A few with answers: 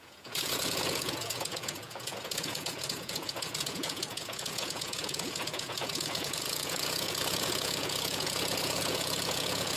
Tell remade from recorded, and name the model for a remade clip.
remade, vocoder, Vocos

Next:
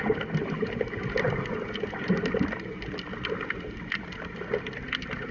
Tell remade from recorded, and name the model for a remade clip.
recorded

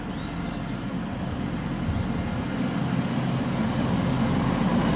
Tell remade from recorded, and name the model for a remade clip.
recorded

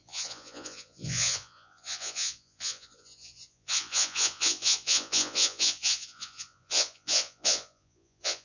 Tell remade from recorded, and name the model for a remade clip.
remade, vocoder, Vocos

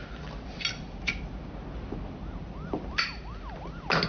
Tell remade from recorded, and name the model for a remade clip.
recorded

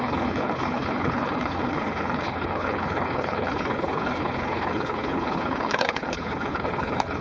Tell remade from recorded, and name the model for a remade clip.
remade, codec, HILCodec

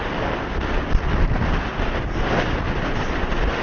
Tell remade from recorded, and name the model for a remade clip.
recorded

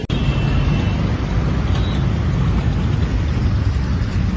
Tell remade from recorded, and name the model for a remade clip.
recorded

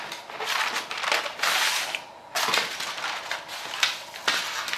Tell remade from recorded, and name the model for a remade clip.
recorded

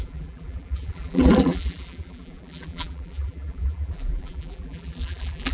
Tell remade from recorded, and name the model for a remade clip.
remade, vocoder, BigVGAN v2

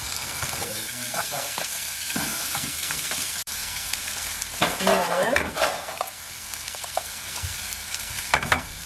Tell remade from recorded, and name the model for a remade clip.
remade, codec, SNAC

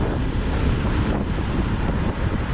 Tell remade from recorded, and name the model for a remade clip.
remade, vocoder, BigVGAN v2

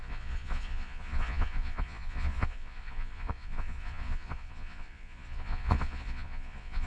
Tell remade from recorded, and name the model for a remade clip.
remade, vocoder, Vocos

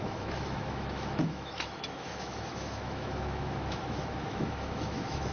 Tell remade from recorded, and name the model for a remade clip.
remade, autoencoder, DAC-VAE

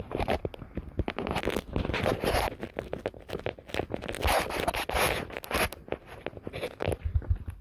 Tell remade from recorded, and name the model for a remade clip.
recorded